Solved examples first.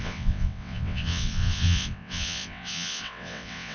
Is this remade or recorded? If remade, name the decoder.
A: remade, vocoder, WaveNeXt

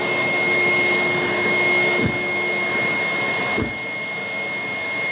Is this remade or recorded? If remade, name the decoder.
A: recorded